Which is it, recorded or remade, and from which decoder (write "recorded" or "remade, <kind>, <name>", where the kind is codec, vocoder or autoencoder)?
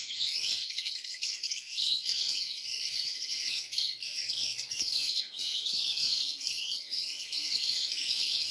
remade, codec, SNAC